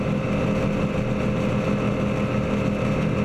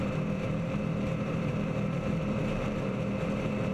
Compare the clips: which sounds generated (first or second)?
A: second